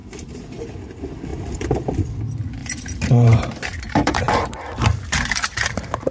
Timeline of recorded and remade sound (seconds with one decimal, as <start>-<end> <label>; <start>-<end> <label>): 0.0-0.7 remade; 0.7-1.3 recorded; 1.3-1.8 remade; 1.8-2.6 recorded; 2.6-6.1 remade